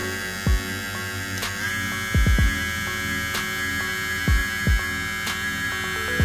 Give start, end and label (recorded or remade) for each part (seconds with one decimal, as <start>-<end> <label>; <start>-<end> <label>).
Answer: 0.0-6.2 recorded